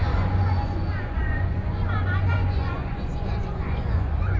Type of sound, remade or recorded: remade